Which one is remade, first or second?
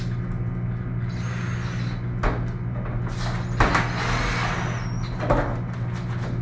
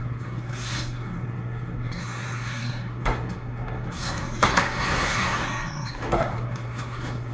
second